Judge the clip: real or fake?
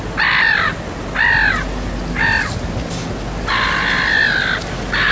real